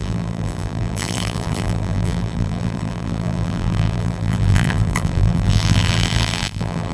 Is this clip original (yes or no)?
no